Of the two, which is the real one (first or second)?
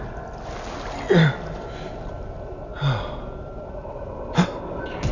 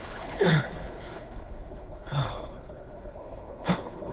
first